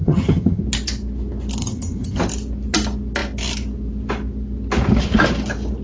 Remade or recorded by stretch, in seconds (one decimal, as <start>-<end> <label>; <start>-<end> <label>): 0.0-0.6 remade; 0.6-1.6 recorded; 1.6-2.2 remade; 2.2-5.8 recorded